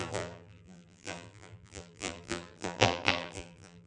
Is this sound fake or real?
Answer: fake